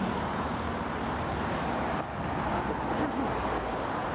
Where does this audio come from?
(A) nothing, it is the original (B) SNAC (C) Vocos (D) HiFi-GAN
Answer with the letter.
A